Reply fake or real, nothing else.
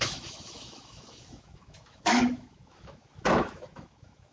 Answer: fake